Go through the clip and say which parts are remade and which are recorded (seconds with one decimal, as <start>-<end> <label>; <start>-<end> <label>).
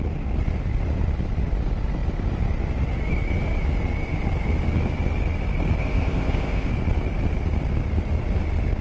0.0-5.8 recorded; 5.8-6.7 remade; 6.7-8.8 recorded